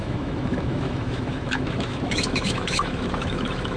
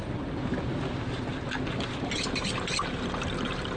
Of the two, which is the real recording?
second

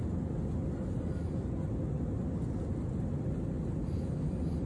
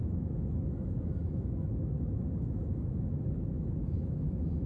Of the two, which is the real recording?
first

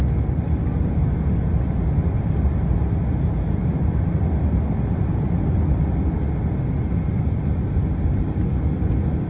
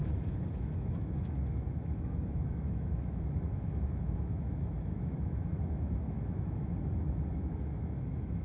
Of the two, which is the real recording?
first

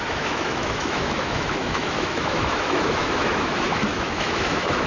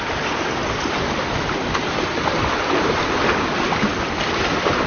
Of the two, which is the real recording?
second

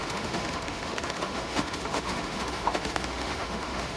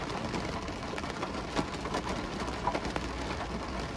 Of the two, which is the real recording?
second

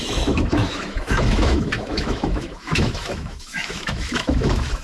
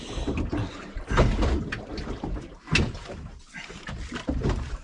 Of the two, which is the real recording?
second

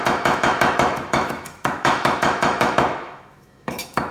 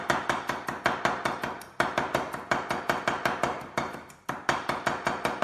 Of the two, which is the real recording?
second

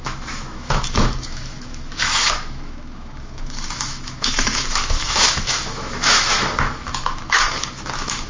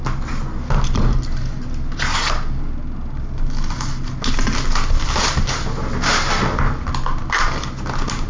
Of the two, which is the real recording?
second